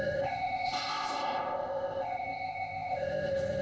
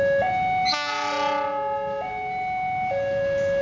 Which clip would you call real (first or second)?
second